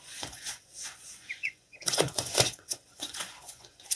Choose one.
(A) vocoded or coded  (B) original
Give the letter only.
A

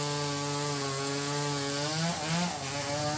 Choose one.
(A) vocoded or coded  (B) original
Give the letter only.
B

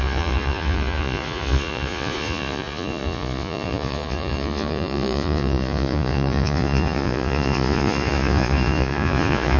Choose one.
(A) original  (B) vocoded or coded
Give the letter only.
B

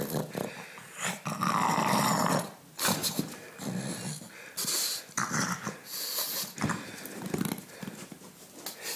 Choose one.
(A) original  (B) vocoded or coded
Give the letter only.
A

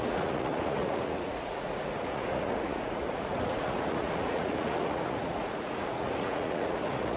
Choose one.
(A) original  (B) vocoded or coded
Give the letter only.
B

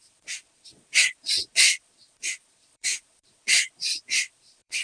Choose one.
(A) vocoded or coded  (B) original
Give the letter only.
A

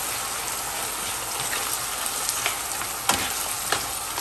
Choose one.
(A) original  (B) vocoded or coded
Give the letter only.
A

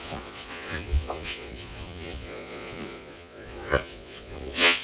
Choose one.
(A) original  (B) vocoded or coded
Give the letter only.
B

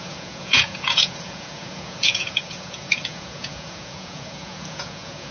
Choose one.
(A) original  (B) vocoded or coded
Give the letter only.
B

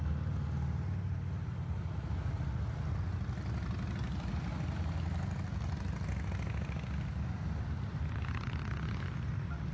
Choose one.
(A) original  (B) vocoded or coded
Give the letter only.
A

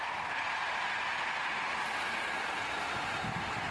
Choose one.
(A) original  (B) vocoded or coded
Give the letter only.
A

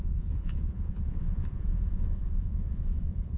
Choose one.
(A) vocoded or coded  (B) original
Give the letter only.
A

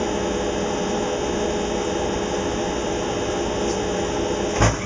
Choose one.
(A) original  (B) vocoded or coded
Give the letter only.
A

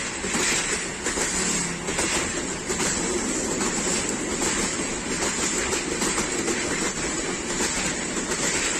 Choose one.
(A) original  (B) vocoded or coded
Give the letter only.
A